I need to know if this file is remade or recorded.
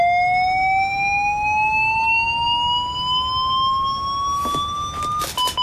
recorded